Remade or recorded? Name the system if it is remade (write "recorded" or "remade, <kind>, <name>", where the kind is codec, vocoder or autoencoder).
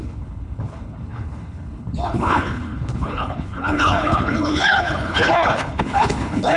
remade, codec, HILCodec